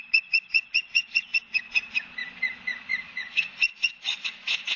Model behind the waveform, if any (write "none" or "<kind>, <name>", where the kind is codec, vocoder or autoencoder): vocoder, Vocos